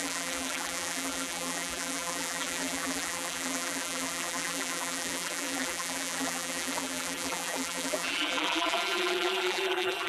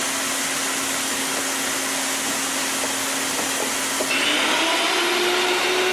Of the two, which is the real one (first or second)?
second